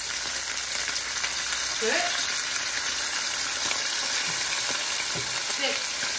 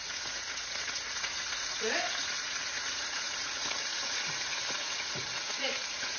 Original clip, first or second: first